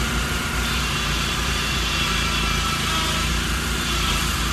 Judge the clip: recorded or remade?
remade